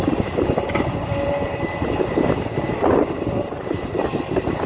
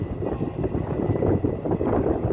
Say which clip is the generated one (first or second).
first